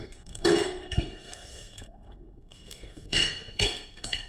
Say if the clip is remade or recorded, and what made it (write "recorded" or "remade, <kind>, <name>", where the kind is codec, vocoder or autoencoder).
remade, codec, SNAC